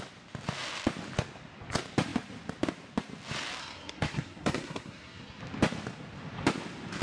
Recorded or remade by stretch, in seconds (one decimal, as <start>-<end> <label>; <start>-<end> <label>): 0.0-3.6 recorded; 3.6-5.4 remade; 5.4-7.0 recorded